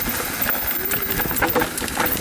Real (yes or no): no